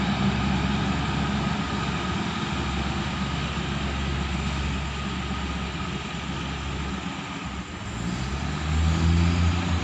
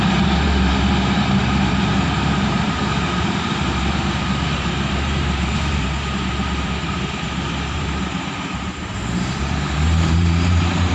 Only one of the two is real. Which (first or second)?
first